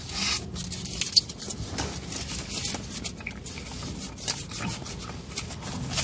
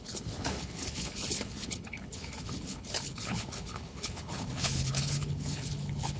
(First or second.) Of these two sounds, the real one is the first